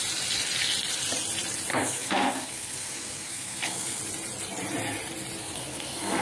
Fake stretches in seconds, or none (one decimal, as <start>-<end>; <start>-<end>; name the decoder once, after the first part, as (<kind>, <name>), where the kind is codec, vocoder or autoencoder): 1.7-4.0 (codec, SNAC); 5.4-6.2